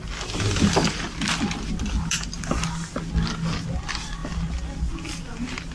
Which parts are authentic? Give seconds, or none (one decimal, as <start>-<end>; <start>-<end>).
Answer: 0.0-5.7